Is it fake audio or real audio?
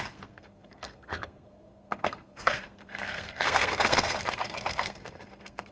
fake